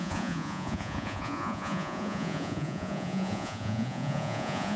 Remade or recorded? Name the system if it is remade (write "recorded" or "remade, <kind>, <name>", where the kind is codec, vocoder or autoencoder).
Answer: remade, vocoder, Vocos